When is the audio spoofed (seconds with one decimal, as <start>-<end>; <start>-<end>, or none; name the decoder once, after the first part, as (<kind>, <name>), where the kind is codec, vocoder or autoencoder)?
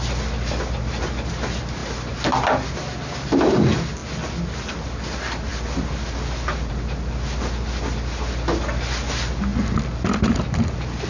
none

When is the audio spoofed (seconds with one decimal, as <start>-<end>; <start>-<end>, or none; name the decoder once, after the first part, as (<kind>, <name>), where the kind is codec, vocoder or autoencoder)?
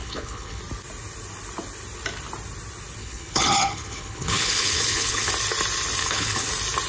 0.0-0.6 (codec, HILCodec); 3.0-5.3; 6.0-6.5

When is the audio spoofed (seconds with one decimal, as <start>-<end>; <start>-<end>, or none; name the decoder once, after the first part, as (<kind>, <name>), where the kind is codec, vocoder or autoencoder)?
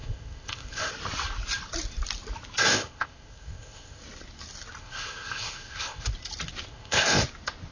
0.0-0.9 (codec, ZipCodec); 2.7-4.0; 4.8-6.1; 6.7-7.2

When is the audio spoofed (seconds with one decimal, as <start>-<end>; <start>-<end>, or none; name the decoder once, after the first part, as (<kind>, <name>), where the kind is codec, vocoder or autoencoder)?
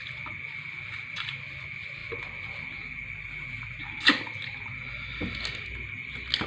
none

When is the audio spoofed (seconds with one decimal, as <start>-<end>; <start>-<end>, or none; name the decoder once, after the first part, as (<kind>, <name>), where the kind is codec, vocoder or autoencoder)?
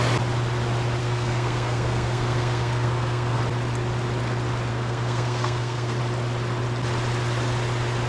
1.0-3.4 (codec, SNAC); 4.7-6.0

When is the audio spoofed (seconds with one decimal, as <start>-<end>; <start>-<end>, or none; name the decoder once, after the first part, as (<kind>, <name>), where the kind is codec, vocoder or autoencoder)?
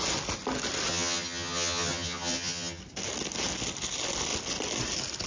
0.9-2.8 (vocoder, HiFi-GAN)